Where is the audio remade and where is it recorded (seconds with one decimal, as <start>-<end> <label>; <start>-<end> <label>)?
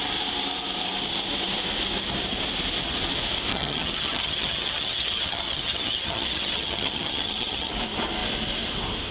0.0-3.5 recorded; 3.5-7.7 remade; 7.7-9.1 recorded